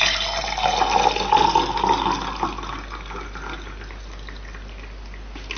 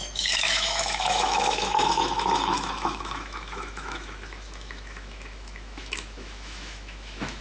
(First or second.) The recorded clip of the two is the first